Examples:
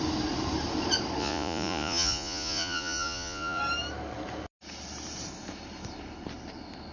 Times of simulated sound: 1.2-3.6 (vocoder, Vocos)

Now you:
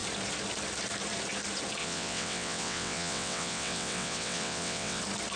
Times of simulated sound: 1.8-5.0 (vocoder, WaveNeXt)

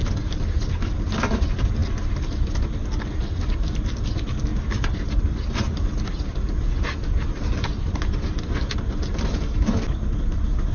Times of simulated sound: none

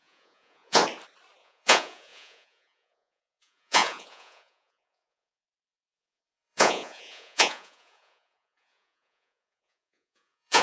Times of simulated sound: 0.0-0.8 (vocoder, Vocos); 1.4-10.6

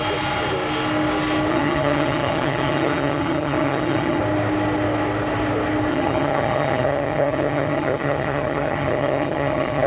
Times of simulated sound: 1.5-4.2 (vocoder, HiFi-GAN); 5.9-9.9